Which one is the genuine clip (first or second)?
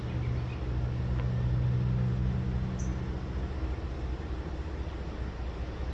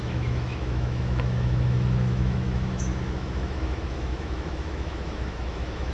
first